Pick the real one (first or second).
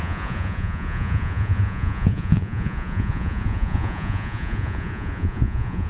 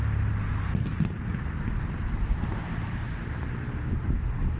second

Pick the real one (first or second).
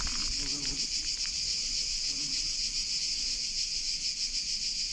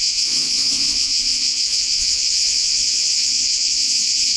first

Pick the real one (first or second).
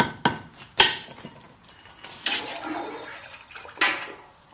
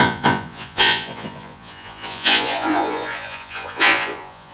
first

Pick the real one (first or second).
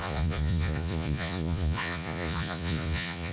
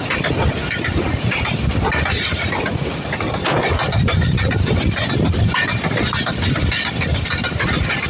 second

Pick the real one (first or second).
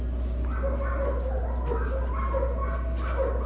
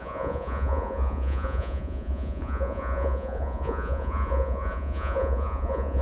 first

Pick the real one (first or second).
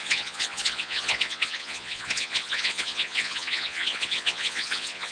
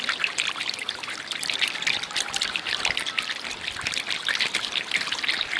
second